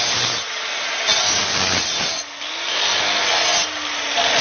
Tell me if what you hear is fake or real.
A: real